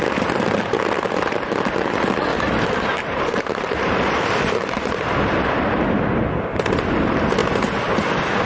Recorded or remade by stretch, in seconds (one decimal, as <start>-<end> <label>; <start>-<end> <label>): 0.0-2.3 recorded; 2.3-5.8 remade; 5.8-8.5 recorded